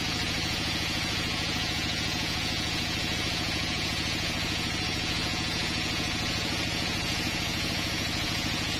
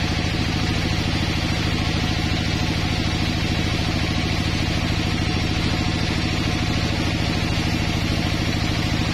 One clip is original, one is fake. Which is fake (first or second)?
first